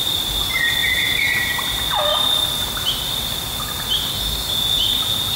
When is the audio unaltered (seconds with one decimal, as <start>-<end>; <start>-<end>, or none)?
0.0-5.4